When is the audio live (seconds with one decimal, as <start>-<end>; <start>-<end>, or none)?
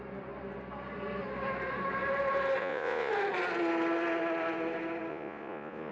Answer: 0.0-2.6; 3.1-5.1